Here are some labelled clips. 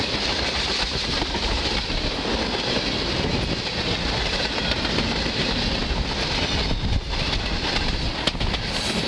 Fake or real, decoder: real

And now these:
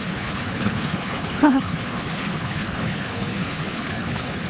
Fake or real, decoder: fake, codec, HILCodec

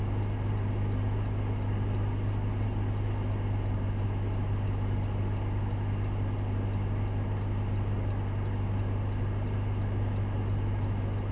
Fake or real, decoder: real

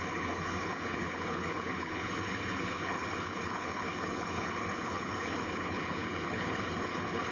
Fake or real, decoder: fake, codec, HILCodec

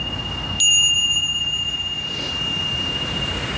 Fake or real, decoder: real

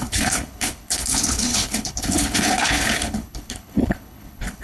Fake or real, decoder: fake, codec, HILCodec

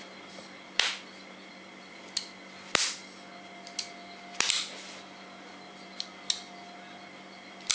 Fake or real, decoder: real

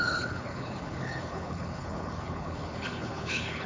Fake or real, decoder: fake, codec, HILCodec